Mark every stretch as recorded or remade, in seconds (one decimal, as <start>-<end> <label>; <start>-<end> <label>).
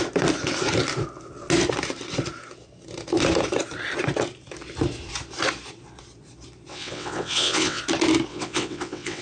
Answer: 0.0-6.7 recorded; 6.7-7.8 remade; 7.8-8.3 recorded; 8.3-9.2 remade